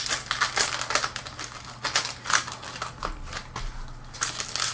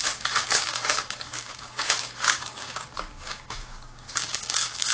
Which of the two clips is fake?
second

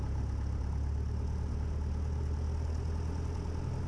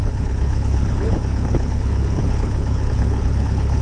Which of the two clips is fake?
second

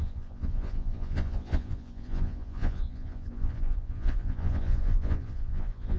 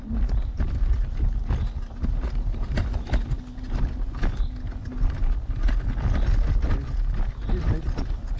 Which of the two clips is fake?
first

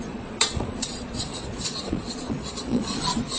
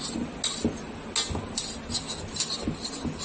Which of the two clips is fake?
first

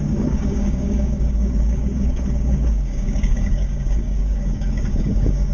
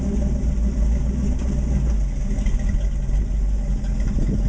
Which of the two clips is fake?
first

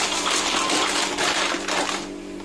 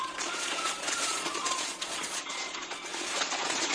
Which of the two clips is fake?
second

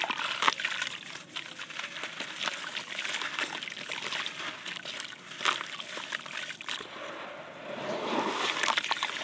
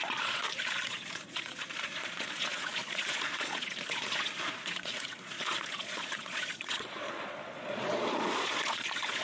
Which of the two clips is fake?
second